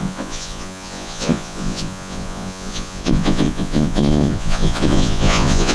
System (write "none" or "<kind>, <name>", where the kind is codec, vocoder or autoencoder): vocoder, Vocos